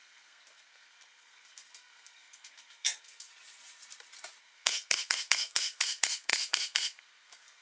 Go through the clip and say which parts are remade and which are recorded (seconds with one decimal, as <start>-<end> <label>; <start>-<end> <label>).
0.0-3.3 remade; 3.3-4.4 recorded; 4.4-7.6 remade